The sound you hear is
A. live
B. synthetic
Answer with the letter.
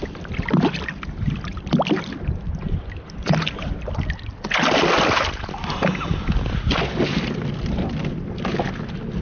A